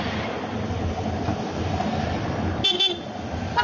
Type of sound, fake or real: fake